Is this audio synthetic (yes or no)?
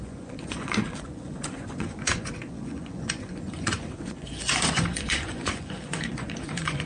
yes